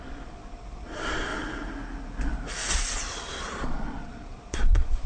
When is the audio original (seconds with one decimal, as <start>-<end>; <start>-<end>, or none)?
1.3-2.7